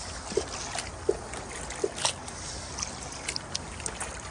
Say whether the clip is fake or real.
real